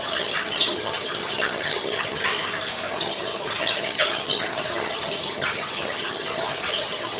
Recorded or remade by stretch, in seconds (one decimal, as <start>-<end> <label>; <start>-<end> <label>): 0.0-2.3 remade; 2.3-2.9 recorded; 2.9-7.2 remade